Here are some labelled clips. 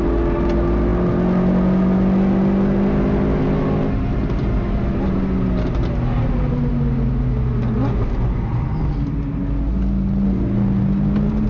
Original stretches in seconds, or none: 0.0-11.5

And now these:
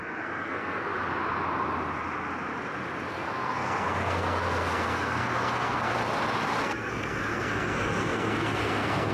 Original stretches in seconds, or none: 0.9-3.1; 6.0-6.6

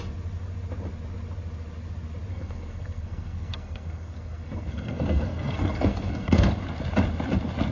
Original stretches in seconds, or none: 0.0-2.3; 6.5-7.7

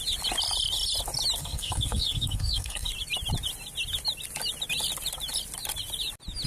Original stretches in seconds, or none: 0.0-1.4; 2.9-6.5

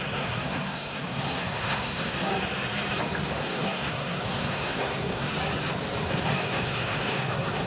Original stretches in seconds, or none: 2.3-3.3; 5.3-6.1

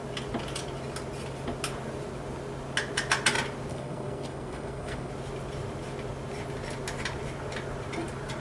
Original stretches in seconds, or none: 0.0-3.7; 5.1-8.4